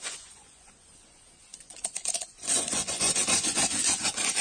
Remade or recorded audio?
remade